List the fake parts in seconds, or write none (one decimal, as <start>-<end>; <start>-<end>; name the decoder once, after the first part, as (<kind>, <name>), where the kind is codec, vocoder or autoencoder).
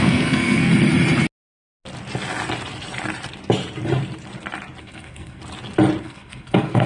0.0-0.7 (codec, SNAC); 4.8-5.4; 6.0-6.9